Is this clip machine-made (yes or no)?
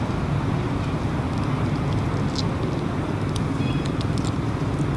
no